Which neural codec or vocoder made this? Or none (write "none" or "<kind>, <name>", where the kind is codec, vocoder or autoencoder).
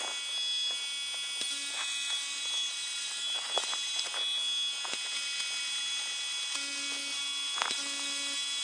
none